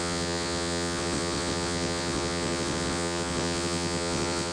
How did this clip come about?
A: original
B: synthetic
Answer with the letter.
B